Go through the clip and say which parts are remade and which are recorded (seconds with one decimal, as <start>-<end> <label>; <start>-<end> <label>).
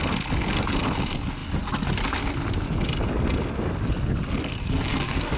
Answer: 0.0-4.6 recorded; 4.6-5.4 remade